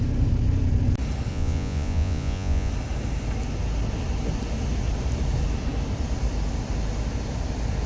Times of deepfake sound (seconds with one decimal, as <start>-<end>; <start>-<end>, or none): 1.3-2.7